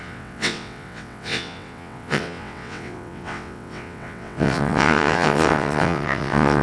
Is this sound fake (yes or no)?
yes